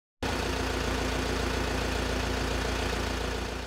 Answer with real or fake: real